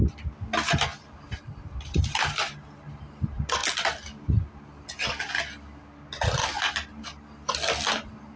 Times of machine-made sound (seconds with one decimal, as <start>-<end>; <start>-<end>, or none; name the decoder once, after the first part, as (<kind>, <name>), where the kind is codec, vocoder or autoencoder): none